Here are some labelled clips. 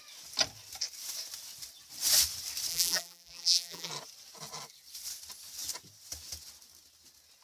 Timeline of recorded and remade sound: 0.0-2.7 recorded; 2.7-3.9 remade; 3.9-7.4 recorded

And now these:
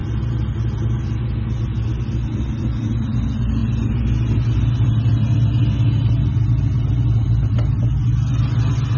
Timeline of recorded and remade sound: 0.0-9.0 recorded